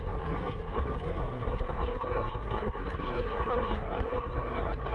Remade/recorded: remade